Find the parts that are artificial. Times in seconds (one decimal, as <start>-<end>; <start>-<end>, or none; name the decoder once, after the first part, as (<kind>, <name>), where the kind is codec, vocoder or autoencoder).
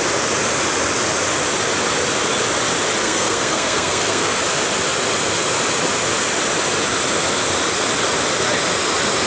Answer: 3.0-4.4 (codec, SNAC)